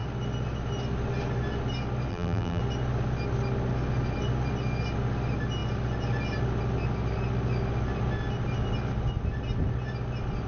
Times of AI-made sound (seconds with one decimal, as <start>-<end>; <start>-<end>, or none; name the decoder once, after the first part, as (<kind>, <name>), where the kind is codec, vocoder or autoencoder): 2.1-2.6 (vocoder, BigVGAN v2)